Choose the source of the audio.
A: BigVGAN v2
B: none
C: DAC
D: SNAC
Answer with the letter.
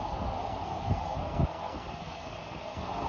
D